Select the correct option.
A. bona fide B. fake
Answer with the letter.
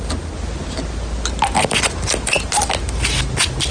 A